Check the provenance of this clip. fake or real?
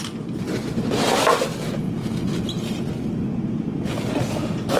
real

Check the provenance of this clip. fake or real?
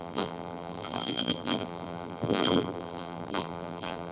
fake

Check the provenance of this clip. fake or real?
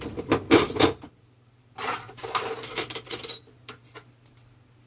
fake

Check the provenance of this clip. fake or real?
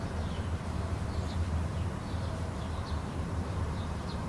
fake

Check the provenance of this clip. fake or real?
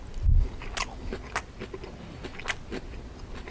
real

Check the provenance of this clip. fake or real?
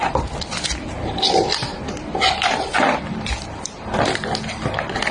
fake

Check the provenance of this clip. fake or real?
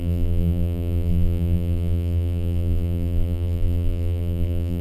fake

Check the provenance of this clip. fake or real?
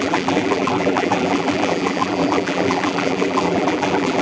fake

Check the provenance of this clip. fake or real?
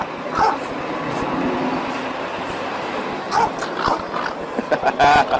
real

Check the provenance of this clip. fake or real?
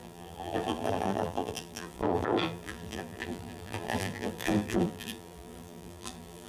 fake